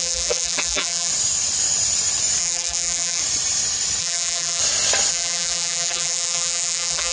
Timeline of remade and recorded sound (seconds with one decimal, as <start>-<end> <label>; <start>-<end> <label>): 0.0-1.1 remade; 1.1-2.4 recorded; 2.4-3.2 remade; 3.2-4.0 recorded; 4.0-4.6 remade; 4.6-5.1 recorded; 5.1-7.1 remade